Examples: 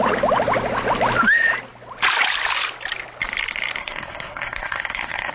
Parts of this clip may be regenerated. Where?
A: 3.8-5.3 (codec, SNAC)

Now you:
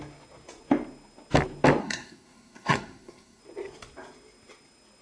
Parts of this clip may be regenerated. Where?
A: 1.8-3.4 (codec, SNAC)

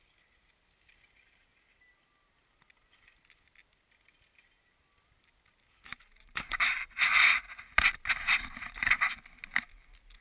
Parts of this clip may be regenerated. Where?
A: 5.9-7.0 (vocoder, BigVGAN v2)

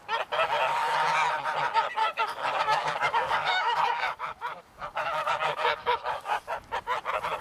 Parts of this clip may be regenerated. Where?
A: 2.0-6.4 (codec, DAC)

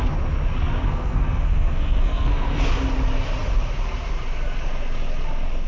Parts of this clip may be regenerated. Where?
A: 0.8-2.6 (codec, SNAC)

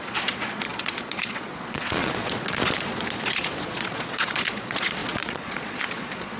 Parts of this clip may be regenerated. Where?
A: 0.0-6.4 (vocoder, Vocos)

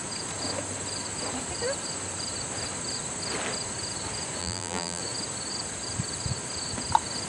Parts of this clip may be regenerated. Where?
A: 4.4-5.0 (vocoder, BigVGAN v2)

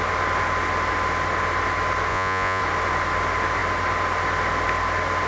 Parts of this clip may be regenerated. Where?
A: 2.1-2.6 (vocoder, Vocos)